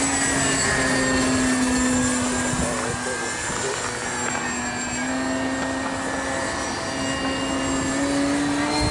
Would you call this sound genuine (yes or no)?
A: yes